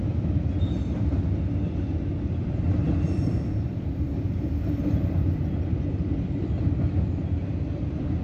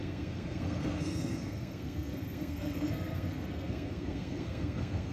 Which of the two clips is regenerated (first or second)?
second